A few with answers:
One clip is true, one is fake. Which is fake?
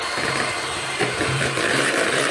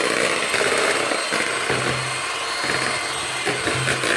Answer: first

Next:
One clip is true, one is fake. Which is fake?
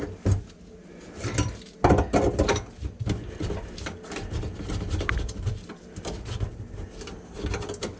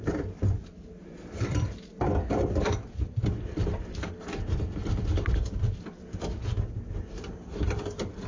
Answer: second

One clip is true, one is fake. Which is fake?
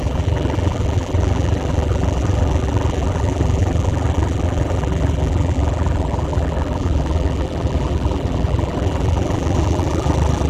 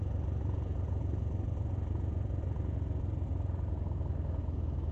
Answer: first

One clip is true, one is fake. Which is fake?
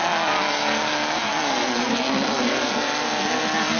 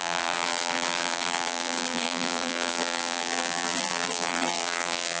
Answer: second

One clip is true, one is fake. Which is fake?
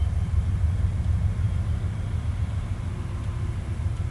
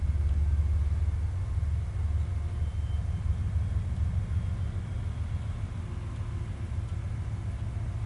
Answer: first